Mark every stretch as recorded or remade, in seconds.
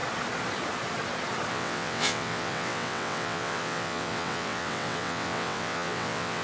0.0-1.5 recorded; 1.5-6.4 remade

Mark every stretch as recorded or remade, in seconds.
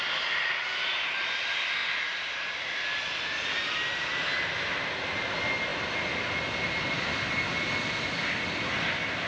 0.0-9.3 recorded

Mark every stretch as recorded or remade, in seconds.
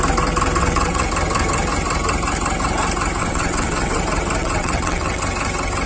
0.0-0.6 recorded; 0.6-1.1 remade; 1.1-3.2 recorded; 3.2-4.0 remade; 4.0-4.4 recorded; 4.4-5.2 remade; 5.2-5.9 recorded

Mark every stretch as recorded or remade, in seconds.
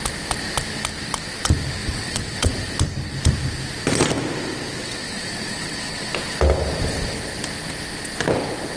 0.0-1.8 recorded; 1.8-2.5 remade; 2.5-4.8 recorded; 4.8-6.1 remade; 6.1-8.8 recorded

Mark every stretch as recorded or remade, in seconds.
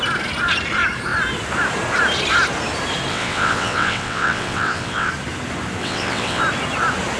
0.0-3.1 recorded; 3.1-5.1 remade; 5.1-5.8 recorded; 5.8-6.4 remade; 6.4-7.2 recorded